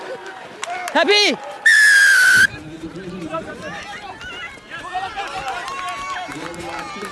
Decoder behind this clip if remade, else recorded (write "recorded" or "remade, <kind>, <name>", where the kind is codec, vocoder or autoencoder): recorded